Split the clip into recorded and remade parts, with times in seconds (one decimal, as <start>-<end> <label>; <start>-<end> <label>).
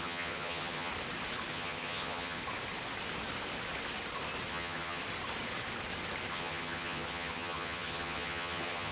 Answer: 0.0-0.9 remade; 0.9-1.5 recorded; 1.5-2.4 remade; 2.4-4.5 recorded; 4.5-5.0 remade; 5.0-6.3 recorded; 6.3-8.9 remade